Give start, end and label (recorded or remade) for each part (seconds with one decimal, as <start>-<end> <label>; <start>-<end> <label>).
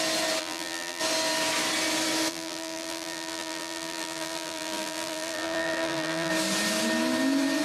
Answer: 0.0-0.4 recorded; 0.4-1.0 remade; 1.0-2.3 recorded; 2.3-6.3 remade; 6.3-7.6 recorded